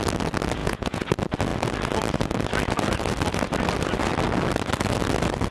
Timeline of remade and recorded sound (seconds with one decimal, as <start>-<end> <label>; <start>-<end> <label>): 0.0-0.6 recorded; 0.6-1.1 remade; 1.1-5.5 recorded